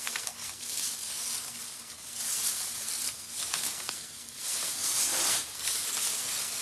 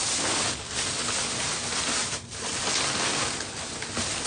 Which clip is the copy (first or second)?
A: first